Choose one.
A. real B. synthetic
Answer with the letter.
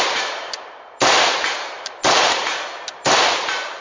B